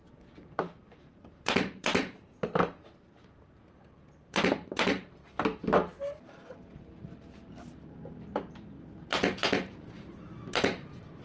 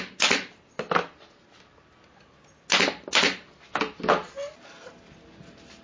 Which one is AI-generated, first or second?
first